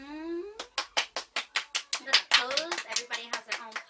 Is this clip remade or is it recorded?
recorded